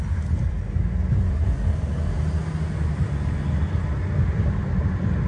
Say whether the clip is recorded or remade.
recorded